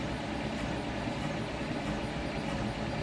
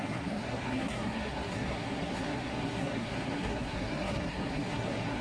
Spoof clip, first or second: second